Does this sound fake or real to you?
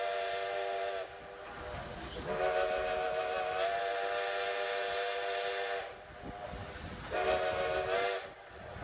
real